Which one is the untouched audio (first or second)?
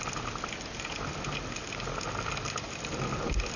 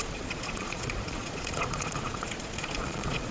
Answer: first